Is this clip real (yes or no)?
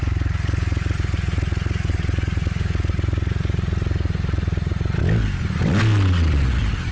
yes